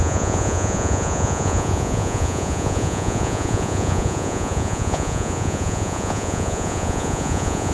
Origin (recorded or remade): remade